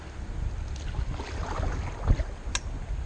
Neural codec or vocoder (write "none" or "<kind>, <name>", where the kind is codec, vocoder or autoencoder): none